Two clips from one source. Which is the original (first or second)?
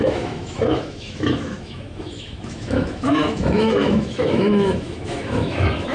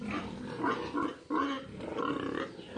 second